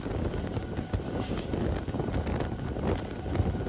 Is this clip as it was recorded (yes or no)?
yes